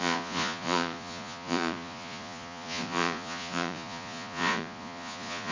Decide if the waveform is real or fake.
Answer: fake